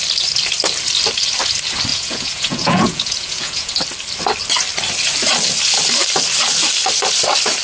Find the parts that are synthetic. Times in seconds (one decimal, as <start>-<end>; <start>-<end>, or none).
1.9-3.7